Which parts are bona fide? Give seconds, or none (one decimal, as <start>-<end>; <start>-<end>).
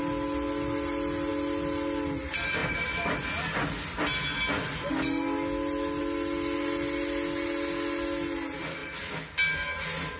0.0-10.2